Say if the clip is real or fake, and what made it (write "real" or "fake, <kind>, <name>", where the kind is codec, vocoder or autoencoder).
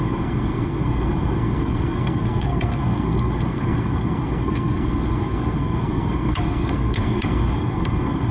fake, codec, SNAC